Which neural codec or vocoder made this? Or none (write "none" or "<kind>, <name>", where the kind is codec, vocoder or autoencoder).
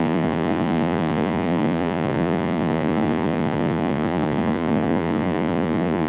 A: vocoder, Vocos